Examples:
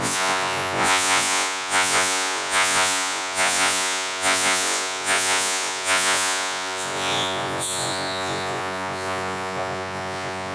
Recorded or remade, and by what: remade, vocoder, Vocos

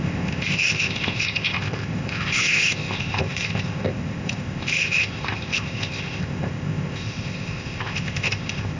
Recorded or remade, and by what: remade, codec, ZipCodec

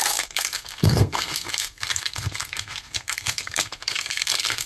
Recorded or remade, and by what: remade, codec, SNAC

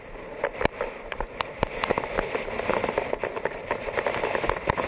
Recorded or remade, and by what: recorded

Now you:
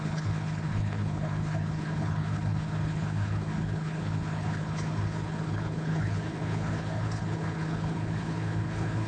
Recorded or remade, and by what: remade, codec, HILCodec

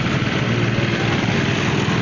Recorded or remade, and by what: recorded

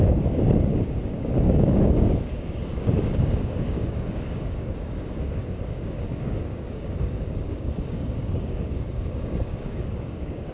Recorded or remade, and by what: remade, codec, DAC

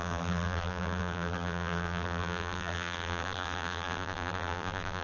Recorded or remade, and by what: remade, vocoder, BigVGAN v2